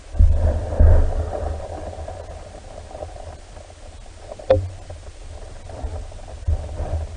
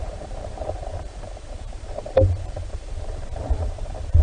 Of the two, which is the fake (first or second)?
second